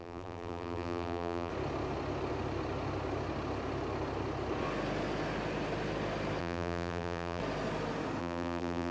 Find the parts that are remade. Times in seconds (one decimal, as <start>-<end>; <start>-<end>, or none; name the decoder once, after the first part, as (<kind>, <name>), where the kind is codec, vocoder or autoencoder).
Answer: 0.0-1.5 (vocoder, BigVGAN v2); 6.4-7.4; 8.2-8.9